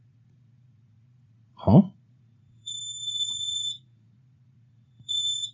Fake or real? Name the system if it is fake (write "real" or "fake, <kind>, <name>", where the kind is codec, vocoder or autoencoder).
fake, vocoder, Vocos